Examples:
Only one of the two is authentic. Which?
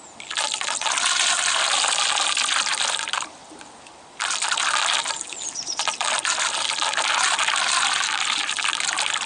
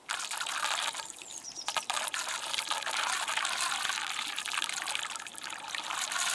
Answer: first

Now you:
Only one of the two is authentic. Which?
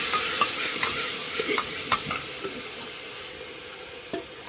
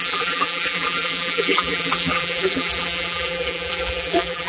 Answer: first